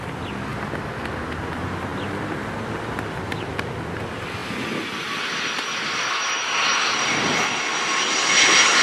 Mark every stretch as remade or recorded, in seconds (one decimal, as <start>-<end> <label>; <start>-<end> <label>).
0.0-0.5 recorded; 0.5-1.1 remade; 1.1-4.4 recorded; 4.4-6.2 remade; 6.2-8.8 recorded

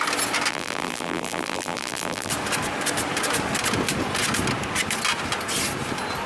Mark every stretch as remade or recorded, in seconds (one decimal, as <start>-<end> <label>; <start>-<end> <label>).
0.0-0.5 recorded; 0.5-2.3 remade; 2.3-6.3 recorded

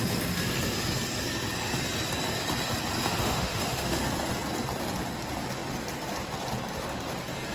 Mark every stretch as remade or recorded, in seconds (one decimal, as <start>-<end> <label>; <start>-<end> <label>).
0.0-3.2 recorded; 3.2-4.1 remade; 4.1-7.5 recorded